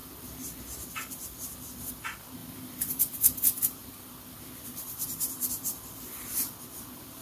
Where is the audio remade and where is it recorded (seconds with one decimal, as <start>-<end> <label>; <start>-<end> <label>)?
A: 0.0-1.9 remade; 1.9-2.4 recorded; 2.4-3.0 remade; 3.0-3.8 recorded; 3.8-7.2 remade